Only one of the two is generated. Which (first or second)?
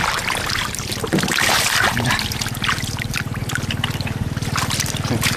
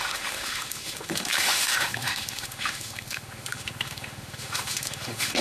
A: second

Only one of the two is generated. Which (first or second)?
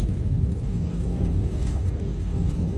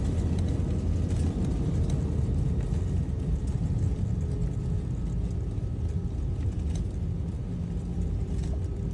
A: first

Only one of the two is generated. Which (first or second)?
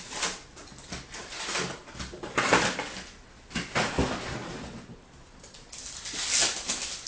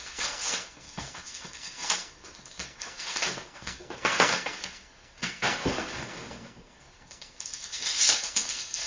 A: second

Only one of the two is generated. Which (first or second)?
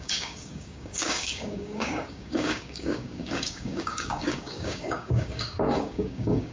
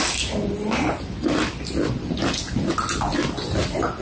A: first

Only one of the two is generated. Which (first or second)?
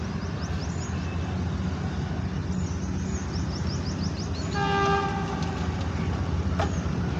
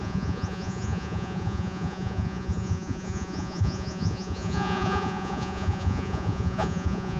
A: second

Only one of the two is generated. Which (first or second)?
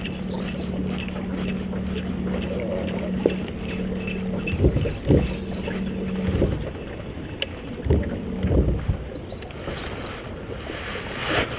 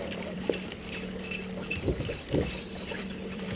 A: second